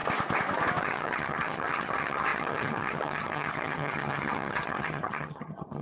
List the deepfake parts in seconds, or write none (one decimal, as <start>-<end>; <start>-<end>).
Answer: 0.8-5.8